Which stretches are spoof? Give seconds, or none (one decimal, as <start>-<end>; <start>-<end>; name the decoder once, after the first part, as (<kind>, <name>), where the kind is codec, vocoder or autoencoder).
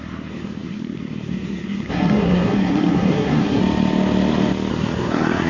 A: 0.0-3.6 (codec, SNAC); 4.7-5.5